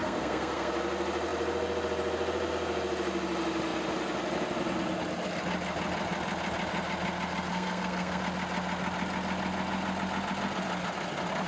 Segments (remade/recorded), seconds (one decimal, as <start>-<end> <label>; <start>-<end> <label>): 0.0-0.7 remade; 0.7-7.5 recorded; 7.5-8.2 remade; 8.2-11.5 recorded